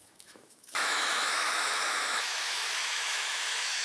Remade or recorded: remade